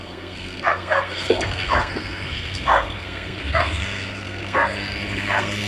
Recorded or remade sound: remade